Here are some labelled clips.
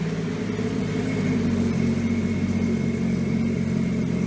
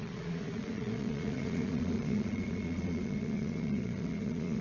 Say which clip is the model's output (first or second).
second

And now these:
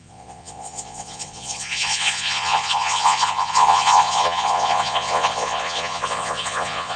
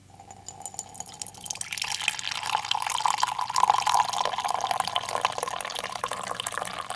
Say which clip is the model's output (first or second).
first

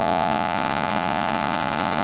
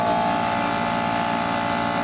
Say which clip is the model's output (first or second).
first